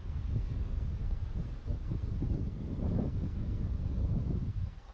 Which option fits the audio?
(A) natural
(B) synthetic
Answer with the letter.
B